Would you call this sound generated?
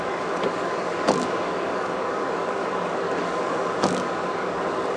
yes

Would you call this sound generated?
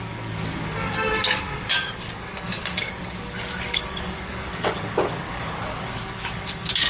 yes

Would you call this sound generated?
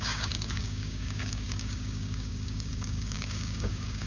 yes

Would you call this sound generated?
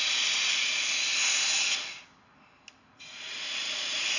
no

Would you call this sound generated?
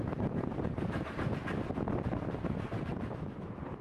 no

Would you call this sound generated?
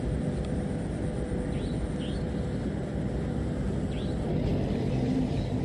no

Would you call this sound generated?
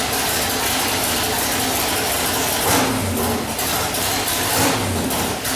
no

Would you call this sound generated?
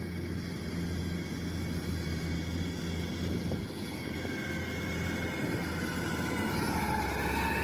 no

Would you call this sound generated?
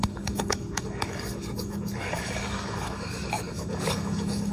yes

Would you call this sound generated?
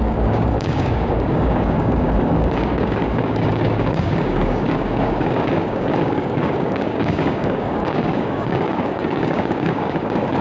yes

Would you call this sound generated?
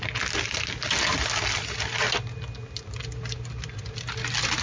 no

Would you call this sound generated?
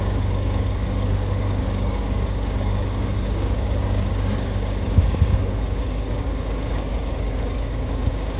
yes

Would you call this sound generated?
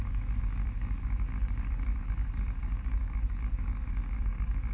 yes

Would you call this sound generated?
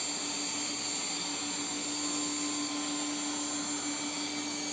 no